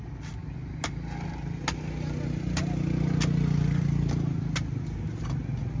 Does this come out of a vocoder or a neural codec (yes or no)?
no